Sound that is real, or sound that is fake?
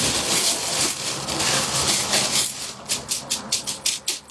fake